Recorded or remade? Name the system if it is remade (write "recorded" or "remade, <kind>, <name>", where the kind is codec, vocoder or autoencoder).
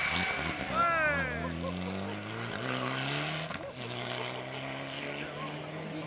recorded